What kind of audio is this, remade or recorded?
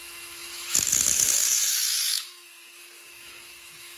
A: remade